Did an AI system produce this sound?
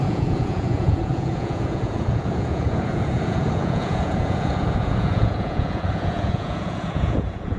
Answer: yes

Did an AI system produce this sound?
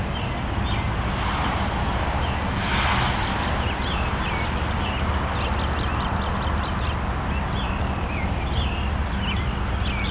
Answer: no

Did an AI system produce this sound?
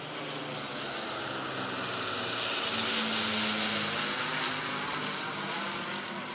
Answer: no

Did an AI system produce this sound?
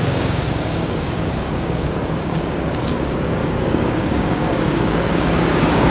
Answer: yes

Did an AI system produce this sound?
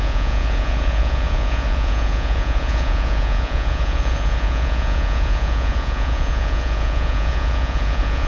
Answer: yes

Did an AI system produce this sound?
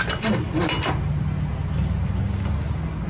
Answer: no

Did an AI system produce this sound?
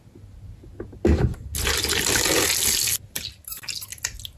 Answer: no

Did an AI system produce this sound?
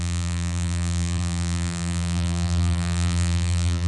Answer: yes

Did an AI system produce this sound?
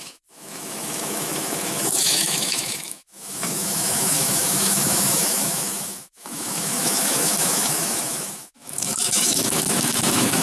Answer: yes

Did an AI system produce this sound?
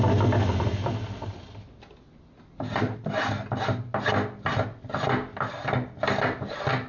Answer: no